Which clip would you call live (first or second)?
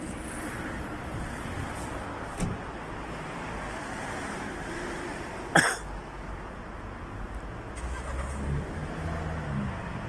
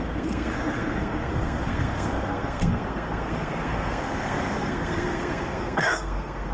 first